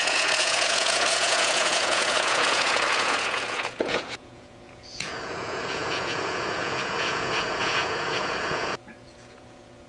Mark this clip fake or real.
fake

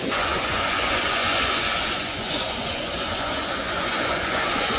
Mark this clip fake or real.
fake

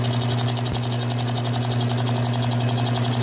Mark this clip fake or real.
real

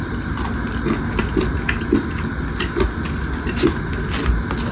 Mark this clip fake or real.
real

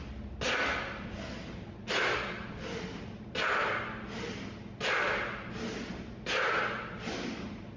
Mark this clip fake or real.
real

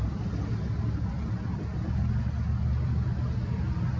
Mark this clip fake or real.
real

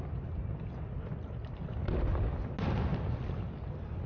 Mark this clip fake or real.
real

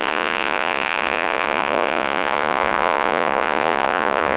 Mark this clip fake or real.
fake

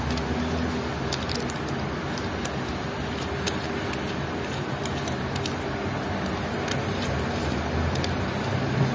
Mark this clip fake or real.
real